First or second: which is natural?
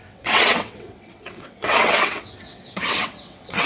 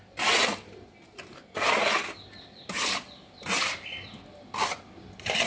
second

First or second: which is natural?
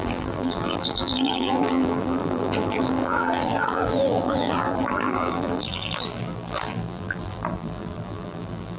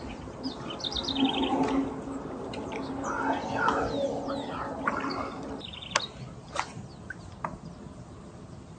second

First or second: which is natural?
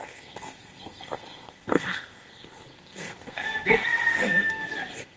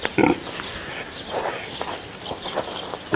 second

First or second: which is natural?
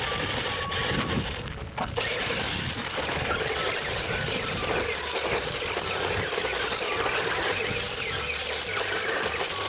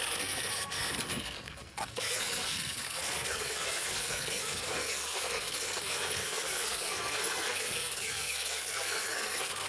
first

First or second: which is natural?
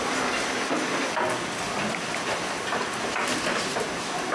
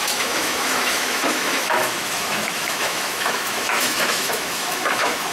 first